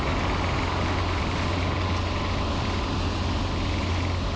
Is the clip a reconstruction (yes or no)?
no